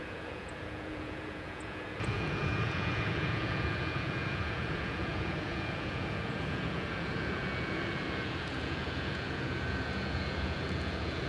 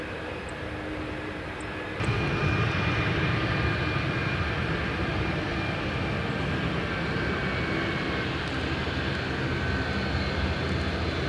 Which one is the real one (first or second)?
second